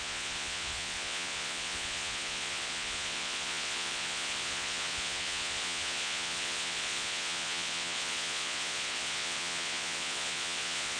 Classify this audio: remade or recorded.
remade